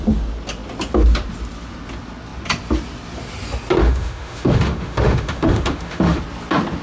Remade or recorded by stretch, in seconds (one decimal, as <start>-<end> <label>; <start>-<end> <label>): 0.0-3.8 recorded; 3.8-6.2 remade; 6.2-6.8 recorded